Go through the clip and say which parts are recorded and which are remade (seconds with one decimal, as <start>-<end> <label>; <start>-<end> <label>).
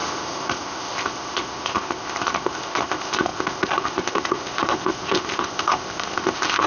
0.0-6.7 remade